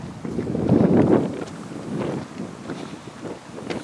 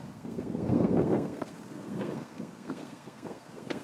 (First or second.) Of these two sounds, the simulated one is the second